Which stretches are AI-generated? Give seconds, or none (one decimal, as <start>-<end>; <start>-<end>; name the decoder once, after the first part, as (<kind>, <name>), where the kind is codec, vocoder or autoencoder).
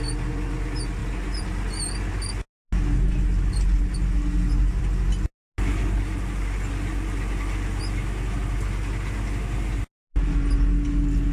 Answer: none